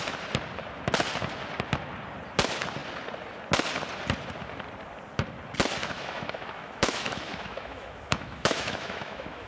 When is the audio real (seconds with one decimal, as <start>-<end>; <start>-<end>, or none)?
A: 0.0-5.8